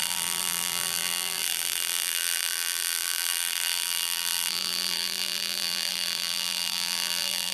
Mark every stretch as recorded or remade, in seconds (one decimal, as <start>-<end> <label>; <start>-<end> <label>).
0.0-7.5 remade